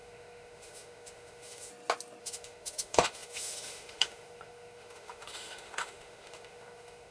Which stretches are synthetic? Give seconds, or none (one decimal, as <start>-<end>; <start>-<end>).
0.0-1.7; 2.2-7.1